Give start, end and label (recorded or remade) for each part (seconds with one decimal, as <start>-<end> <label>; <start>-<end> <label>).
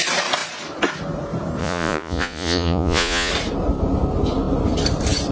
0.0-1.6 recorded; 1.6-3.3 remade; 3.3-5.3 recorded